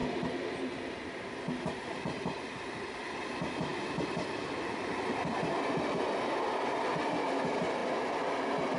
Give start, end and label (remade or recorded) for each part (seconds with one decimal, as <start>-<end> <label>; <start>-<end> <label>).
0.0-8.8 recorded

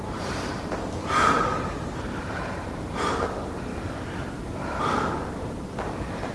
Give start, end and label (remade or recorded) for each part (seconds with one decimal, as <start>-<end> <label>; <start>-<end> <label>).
0.0-3.7 remade; 3.7-4.8 recorded; 4.8-6.3 remade

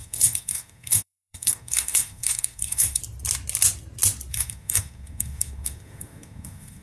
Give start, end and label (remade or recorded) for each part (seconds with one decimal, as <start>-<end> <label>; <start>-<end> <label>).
0.0-3.0 remade; 3.0-4.3 recorded; 4.3-6.8 remade

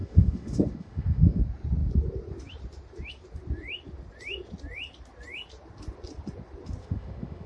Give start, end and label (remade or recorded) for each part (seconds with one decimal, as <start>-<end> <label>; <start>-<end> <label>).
0.0-1.4 remade; 1.4-6.8 recorded; 6.8-7.5 remade

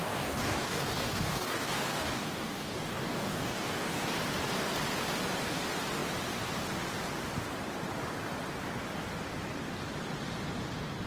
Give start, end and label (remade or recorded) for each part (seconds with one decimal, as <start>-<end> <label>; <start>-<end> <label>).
0.0-4.1 remade; 4.1-11.1 recorded

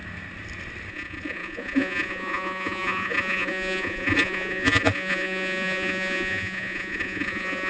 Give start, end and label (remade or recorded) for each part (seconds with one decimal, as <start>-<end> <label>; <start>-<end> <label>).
0.0-0.9 recorded; 0.9-7.7 remade

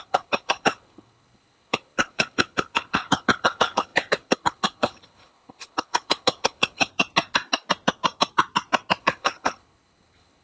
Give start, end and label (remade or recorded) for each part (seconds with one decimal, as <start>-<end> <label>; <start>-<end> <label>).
0.0-6.9 remade; 6.9-9.0 recorded; 9.0-10.4 remade